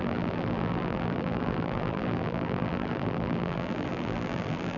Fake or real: fake